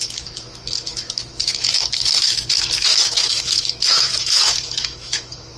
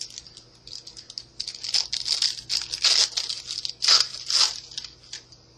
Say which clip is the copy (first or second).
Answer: first